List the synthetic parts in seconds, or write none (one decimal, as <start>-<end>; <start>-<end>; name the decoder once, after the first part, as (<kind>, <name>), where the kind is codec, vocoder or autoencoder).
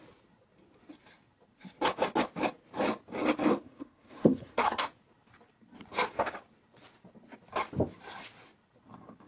3.5-4.9 (codec, SNAC)